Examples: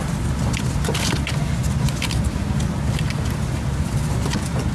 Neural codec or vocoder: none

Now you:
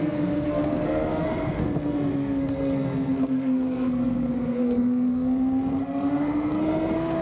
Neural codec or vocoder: codec, SNAC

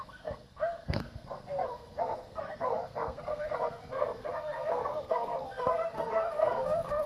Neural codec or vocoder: codec, SNAC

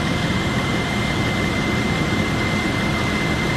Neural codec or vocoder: none